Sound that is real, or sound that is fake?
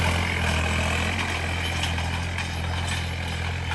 real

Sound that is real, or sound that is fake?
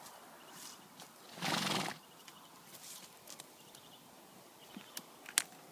real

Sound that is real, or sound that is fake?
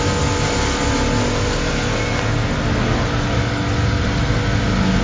real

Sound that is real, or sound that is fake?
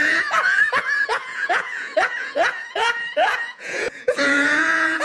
fake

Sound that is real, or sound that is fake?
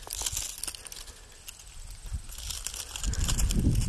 real